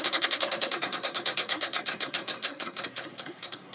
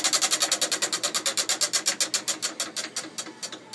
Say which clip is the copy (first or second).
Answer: first